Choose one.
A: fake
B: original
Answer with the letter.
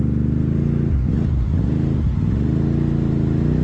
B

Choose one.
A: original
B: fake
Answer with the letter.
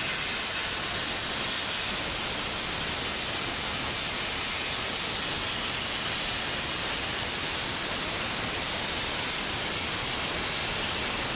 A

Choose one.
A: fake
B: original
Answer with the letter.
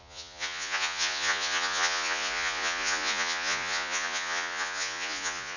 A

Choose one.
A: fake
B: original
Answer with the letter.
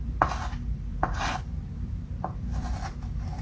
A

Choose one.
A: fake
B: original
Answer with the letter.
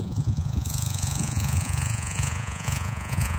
A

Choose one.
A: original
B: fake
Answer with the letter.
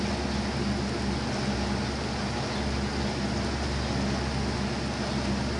A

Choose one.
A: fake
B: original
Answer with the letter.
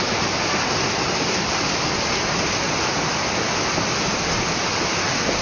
B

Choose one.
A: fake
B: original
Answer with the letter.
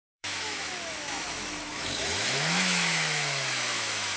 A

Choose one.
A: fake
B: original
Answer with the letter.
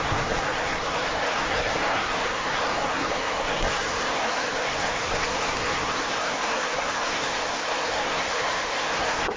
A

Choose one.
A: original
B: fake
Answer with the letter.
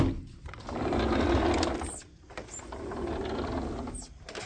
A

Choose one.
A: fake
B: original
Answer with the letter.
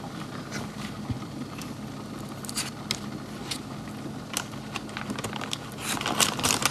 B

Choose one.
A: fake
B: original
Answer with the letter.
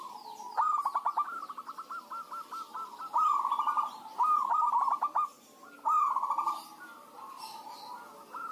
B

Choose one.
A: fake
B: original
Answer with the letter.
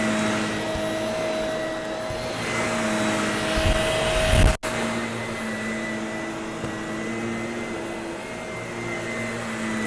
B